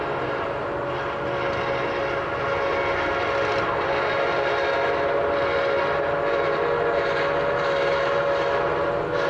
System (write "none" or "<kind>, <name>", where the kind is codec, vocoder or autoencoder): none